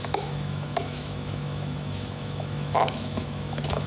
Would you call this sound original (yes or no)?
no